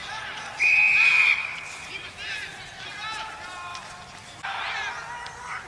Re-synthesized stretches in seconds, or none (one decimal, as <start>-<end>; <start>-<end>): 0.0-0.7; 1.1-2.3; 3.7-4.9